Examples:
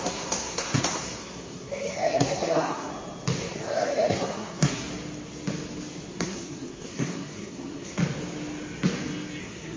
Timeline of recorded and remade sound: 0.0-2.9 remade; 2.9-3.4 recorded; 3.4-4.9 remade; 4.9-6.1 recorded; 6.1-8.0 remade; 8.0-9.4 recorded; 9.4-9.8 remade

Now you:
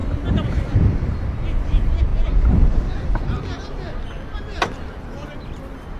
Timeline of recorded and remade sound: 0.0-6.0 recorded

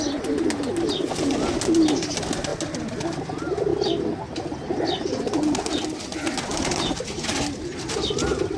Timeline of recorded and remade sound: 0.0-8.6 recorded